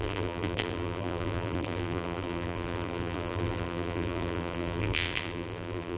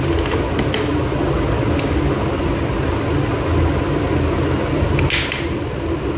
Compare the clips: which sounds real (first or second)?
second